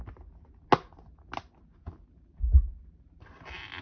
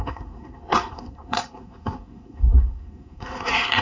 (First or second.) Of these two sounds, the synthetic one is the second